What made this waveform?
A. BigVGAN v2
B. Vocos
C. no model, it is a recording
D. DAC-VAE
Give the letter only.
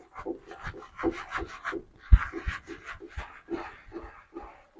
C